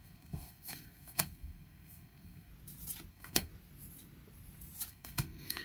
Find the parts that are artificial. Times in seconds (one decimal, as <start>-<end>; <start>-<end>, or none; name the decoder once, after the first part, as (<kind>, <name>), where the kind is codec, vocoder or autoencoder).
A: 0.0-2.5 (codec, SNAC); 3.1-3.5; 4.9-5.6